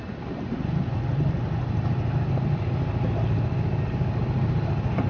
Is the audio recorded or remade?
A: recorded